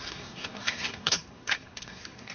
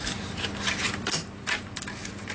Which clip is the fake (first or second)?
first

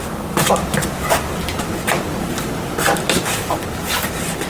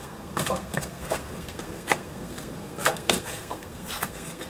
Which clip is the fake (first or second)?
second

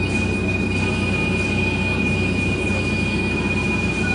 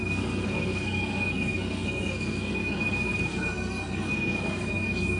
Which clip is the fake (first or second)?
second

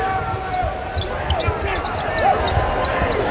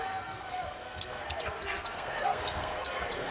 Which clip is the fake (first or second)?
second